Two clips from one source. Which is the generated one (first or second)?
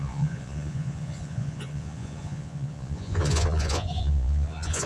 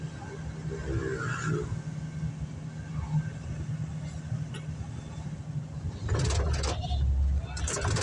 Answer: first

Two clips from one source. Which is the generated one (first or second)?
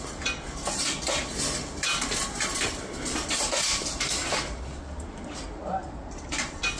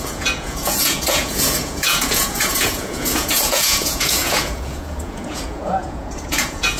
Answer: second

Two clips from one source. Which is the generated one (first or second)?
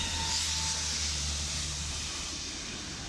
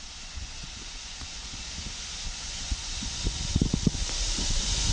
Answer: second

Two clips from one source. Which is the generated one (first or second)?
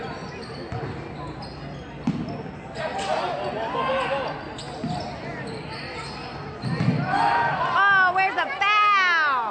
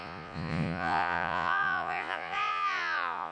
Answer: second